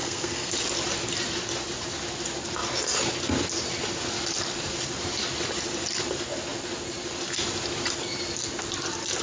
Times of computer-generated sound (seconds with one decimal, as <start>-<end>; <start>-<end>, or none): 0.0-0.5